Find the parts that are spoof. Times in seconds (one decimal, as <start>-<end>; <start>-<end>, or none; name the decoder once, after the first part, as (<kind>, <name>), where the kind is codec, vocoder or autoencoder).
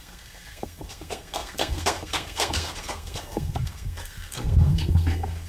0.0-5.5 (codec, SNAC)